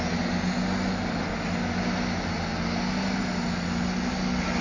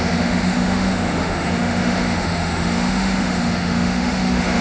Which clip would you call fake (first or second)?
second